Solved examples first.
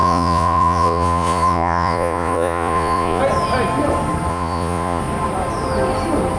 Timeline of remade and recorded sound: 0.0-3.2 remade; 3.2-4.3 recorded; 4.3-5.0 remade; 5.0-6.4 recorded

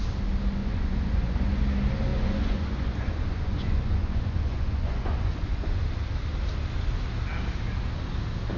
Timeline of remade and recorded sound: 0.0-0.6 recorded; 0.6-1.6 remade; 1.6-2.1 recorded; 2.1-5.8 remade; 5.8-8.6 recorded

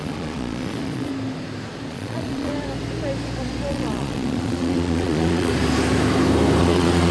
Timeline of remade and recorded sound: 0.0-1.1 remade; 1.1-1.9 recorded; 1.9-2.5 remade; 2.5-3.7 recorded; 3.7-5.5 remade; 5.5-6.6 recorded; 6.6-7.1 remade

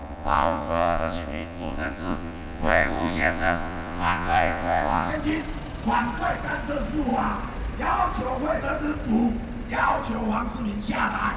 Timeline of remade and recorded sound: 0.0-5.1 remade; 5.1-11.4 recorded